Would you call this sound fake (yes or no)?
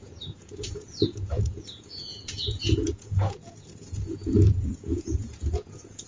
yes